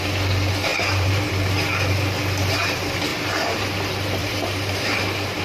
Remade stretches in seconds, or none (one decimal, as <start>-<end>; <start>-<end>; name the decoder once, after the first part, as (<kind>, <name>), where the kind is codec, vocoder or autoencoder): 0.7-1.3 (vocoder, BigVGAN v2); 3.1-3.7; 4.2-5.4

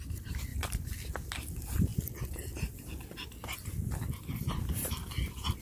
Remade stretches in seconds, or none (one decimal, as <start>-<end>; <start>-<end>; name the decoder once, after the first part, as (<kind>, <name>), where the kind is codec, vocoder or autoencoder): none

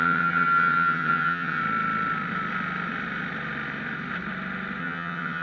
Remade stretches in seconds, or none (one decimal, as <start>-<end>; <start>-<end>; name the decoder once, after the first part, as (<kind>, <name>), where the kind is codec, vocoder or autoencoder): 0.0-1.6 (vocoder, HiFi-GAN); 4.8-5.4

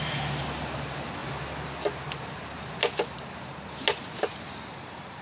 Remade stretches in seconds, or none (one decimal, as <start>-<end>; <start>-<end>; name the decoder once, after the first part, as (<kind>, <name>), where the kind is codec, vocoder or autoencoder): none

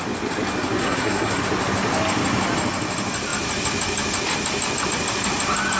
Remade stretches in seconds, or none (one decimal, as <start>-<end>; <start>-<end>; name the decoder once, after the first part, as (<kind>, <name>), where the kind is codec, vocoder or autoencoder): 0.8-1.4 (codec, SNAC)

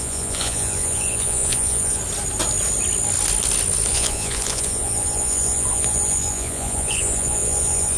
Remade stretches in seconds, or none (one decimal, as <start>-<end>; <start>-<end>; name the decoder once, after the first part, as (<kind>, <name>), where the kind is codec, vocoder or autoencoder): 0.0-2.0 (vocoder, Vocos); 3.9-8.0